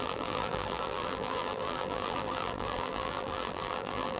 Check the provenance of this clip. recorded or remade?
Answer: remade